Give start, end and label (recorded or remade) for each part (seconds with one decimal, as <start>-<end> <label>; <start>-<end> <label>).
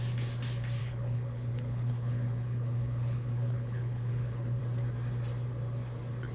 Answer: 0.0-0.8 recorded; 0.8-4.6 remade; 4.6-6.3 recorded